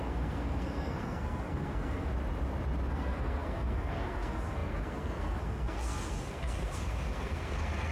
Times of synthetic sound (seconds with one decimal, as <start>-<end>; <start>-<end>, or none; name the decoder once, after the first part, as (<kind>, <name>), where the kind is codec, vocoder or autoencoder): 0.0-2.1 (codec, SNAC); 2.9-7.9